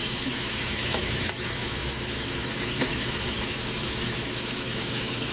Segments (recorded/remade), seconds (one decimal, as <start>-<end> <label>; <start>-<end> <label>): 0.0-5.3 remade